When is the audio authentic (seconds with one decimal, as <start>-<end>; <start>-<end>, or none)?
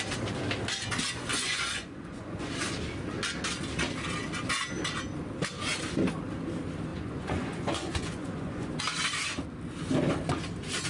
0.0-1.3; 2.5-6.9; 8.8-10.9